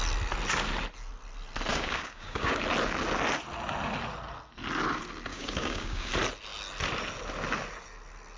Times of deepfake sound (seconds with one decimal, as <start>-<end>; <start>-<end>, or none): 1.7-2.6; 5.3-6.1